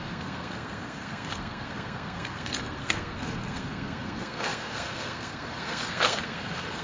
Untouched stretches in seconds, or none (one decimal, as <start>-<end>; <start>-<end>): none